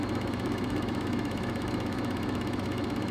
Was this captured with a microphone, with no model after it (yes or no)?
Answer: no